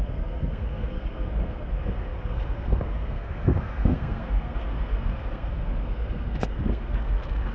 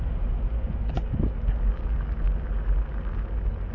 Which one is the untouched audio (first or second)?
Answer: second